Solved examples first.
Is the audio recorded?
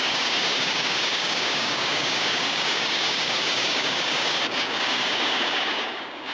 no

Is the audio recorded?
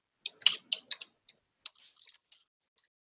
yes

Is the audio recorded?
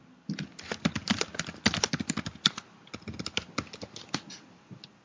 yes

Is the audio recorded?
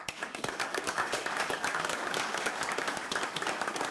no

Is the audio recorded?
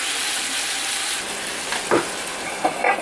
yes